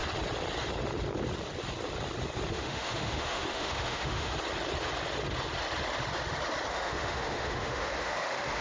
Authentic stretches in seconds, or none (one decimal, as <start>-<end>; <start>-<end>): 0.0-2.5; 4.3-6.7